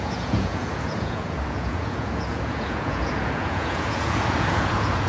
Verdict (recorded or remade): remade